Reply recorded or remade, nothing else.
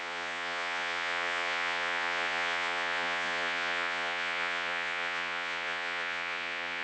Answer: remade